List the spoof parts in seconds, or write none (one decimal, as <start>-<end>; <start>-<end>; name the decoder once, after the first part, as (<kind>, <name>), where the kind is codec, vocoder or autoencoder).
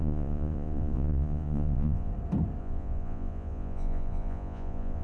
0.0-2.1 (vocoder, Vocos); 2.6-5.0